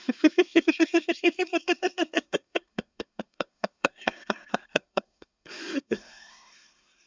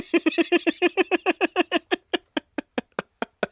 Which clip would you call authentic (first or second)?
second